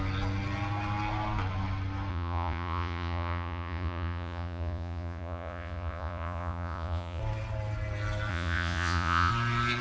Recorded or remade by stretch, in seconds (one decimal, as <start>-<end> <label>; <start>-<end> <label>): 0.0-2.1 recorded; 2.1-7.2 remade; 7.2-8.3 recorded; 8.3-9.3 remade; 9.3-9.8 recorded